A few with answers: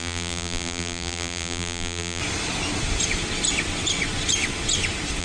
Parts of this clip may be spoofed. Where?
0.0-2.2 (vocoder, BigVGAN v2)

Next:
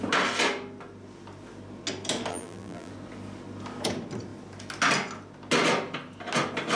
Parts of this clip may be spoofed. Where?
2.3-2.9 (vocoder, BigVGAN v2)